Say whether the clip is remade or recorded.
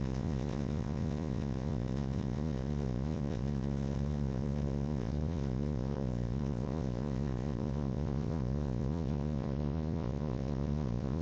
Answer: remade